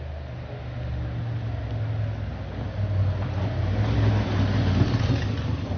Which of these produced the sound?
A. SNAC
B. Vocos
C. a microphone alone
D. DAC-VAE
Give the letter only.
C